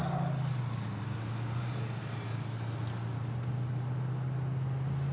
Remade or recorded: recorded